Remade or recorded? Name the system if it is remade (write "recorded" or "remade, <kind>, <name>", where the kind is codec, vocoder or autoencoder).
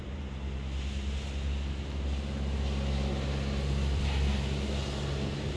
recorded